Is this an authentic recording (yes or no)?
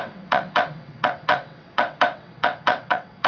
no